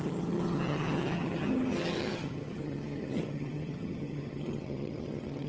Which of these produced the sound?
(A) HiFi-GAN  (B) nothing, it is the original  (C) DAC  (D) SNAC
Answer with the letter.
A